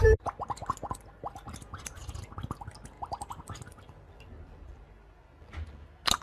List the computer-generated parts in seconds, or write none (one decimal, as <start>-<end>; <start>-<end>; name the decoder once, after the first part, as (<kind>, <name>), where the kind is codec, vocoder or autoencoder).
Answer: none

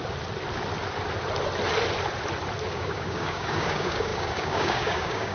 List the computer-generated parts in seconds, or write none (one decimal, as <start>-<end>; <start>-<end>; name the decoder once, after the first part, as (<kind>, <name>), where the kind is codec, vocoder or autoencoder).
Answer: 2.7-5.3 (codec, DAC)

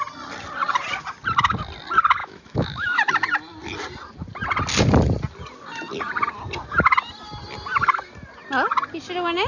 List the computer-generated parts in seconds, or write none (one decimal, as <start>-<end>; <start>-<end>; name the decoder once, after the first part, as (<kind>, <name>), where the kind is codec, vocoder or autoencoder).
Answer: 2.2-3.1 (autoencoder, DAC-VAE)

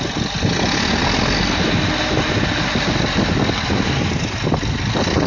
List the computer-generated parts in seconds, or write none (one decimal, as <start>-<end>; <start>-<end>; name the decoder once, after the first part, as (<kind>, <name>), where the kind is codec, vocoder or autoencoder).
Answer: none

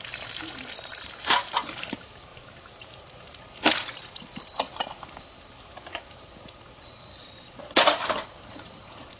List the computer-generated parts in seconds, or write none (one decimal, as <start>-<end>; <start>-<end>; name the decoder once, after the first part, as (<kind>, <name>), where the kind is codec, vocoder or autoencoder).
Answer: 0.0-9.2 (vocoder, BigVGAN v2)

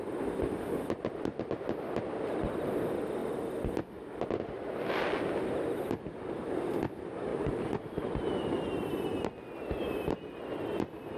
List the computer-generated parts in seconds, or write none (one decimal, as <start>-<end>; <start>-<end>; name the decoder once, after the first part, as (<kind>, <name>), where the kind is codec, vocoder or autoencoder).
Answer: 7.3-8.0 (vocoder, BigVGAN v2)

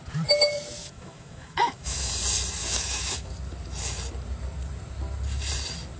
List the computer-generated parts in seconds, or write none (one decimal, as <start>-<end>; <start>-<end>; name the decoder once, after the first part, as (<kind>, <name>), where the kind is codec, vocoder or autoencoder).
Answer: 0.8-2.1 (autoencoder, DAC-VAE); 2.6-3.3

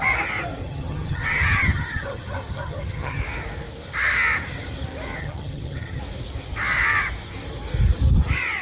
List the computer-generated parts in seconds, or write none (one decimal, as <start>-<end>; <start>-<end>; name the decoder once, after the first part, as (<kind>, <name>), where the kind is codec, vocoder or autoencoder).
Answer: 0.6-3.2 (vocoder, HiFi-GAN); 5.2-6.0